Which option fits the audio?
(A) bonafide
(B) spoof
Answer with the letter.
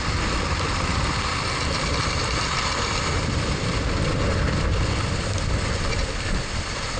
A